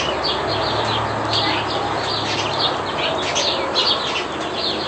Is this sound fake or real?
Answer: real